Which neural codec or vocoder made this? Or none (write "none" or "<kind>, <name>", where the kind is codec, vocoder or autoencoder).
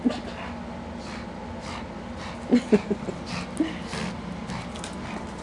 none